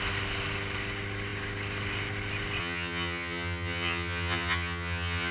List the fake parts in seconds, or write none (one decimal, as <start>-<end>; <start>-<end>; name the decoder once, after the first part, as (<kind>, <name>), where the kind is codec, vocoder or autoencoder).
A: 2.6-5.3 (vocoder, HiFi-GAN)